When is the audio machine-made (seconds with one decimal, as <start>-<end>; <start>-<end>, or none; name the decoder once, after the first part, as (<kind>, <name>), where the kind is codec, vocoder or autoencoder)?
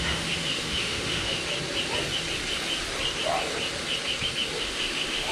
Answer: 0.0-1.4 (autoencoder, DAC-VAE); 4.6-5.3